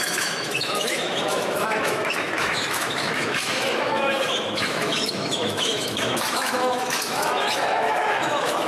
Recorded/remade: remade